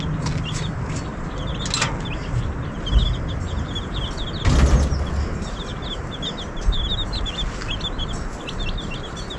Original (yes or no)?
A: yes